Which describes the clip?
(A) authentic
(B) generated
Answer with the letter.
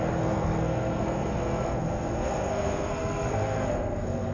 B